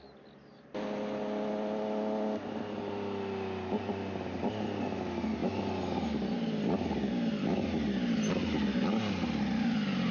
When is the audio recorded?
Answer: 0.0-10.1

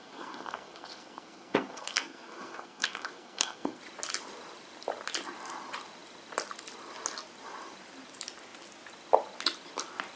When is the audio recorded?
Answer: 3.8-10.2

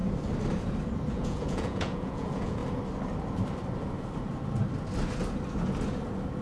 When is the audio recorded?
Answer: 0.0-1.1; 2.6-6.4